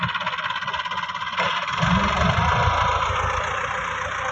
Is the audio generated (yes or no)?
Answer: no